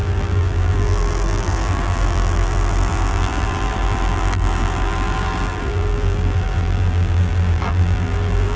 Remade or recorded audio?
remade